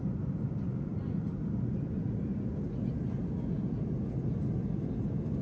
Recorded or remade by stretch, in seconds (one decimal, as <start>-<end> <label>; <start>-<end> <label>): 0.0-5.4 recorded